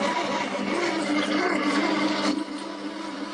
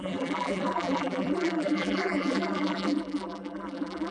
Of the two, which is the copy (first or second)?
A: second